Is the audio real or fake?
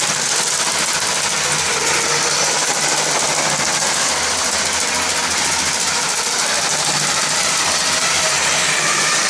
real